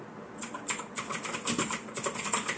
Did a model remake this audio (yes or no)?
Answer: no